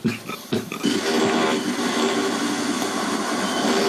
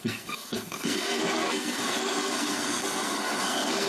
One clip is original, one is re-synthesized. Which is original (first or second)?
first